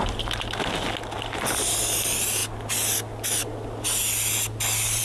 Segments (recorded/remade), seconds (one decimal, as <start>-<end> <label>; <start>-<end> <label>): 0.0-5.0 recorded